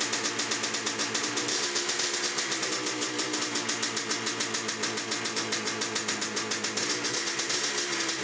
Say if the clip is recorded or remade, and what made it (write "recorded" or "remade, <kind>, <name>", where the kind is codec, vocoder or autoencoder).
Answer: recorded